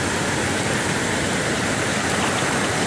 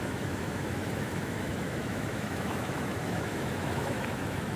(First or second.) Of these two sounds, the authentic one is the first